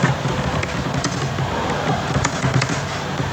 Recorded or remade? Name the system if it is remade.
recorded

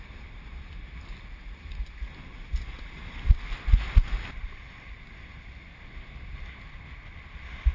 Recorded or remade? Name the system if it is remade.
recorded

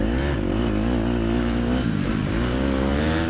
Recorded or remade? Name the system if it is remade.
recorded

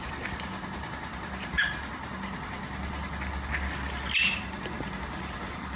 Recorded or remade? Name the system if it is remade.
recorded